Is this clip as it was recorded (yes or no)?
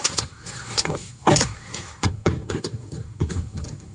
no